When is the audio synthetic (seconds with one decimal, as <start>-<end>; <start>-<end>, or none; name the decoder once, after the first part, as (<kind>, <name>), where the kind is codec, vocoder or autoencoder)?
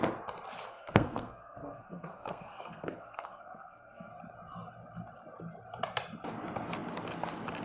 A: 0.7-4.1 (codec, SNAC)